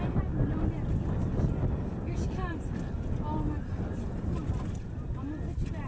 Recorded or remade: recorded